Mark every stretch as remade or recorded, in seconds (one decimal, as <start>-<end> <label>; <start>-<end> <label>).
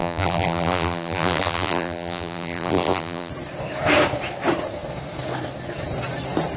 0.0-3.3 remade; 3.3-6.6 recorded